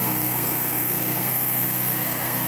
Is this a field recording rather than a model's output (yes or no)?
no